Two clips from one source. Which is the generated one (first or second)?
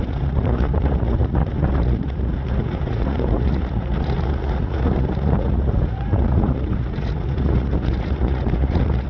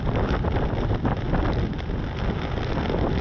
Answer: first